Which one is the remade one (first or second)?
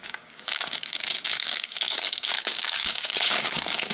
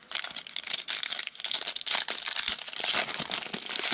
first